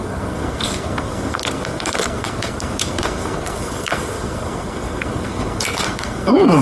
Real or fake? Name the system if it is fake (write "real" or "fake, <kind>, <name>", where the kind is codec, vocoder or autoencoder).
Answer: fake, codec, SNAC